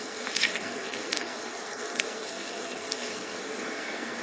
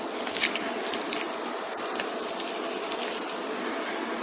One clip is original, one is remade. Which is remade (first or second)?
first